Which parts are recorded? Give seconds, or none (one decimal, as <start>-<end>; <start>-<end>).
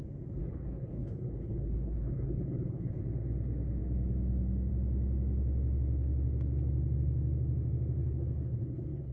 0.0-0.4; 3.0-8.0